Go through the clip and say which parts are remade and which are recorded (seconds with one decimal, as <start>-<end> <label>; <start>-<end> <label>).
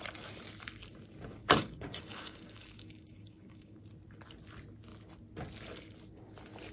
0.0-1.4 recorded; 1.4-3.8 remade; 3.8-6.7 recorded